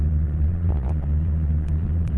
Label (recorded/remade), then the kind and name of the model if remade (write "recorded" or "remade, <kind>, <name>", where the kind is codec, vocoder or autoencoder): remade, vocoder, Vocos